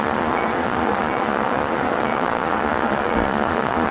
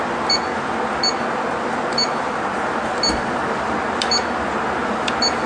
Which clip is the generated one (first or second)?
first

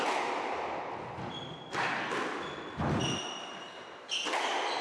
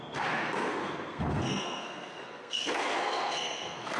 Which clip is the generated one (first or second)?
second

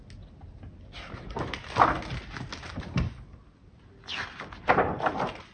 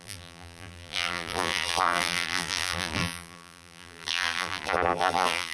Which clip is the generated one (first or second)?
second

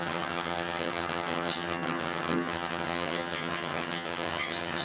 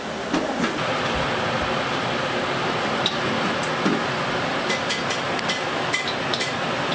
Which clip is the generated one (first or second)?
first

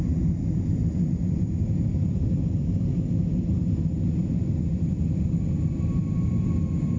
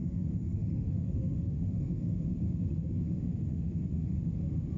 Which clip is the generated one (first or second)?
second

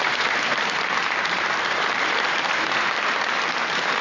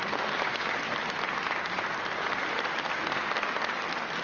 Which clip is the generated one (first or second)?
first